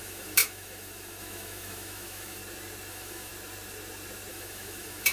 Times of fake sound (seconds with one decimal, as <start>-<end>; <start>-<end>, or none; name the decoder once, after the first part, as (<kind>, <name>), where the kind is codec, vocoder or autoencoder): 0.0-2.4 (autoencoder, DAC-VAE); 2.9-3.3; 4.3-5.1